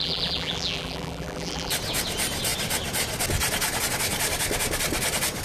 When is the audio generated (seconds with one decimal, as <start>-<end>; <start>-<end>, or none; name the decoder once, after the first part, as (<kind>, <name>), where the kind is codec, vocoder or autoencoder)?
0.0-1.7 (vocoder, BigVGAN v2)